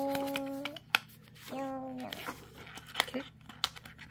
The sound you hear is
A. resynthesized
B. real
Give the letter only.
B